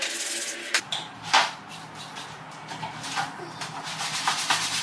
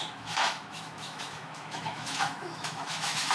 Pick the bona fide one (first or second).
first